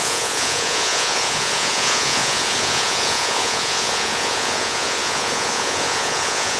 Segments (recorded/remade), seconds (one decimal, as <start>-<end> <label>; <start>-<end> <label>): 0.0-6.6 remade